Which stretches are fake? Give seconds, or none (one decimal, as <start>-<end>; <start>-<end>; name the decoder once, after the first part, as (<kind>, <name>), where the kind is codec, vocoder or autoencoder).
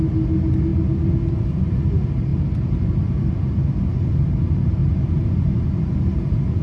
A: 4.8-5.6 (vocoder, BigVGAN v2)